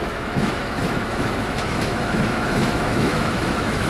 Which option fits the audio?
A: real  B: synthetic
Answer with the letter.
B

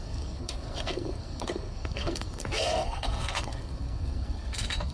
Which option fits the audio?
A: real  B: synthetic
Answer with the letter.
B